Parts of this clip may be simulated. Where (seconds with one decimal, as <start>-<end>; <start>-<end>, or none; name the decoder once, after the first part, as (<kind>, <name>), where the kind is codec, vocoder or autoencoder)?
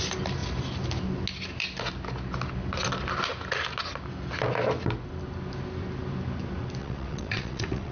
6.8-7.9 (vocoder, WaveNeXt)